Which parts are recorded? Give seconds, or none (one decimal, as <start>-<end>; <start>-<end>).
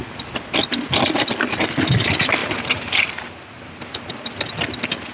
0.0-2.4; 4.1-5.1